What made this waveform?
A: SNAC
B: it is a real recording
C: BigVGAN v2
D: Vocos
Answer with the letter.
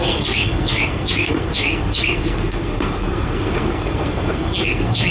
A